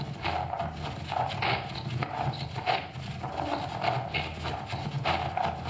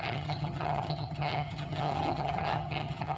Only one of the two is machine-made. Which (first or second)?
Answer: second